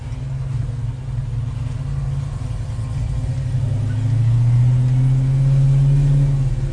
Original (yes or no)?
yes